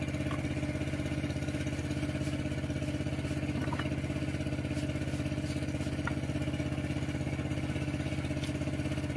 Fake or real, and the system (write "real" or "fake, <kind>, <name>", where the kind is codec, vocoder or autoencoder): real